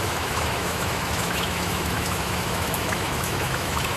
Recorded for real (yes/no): no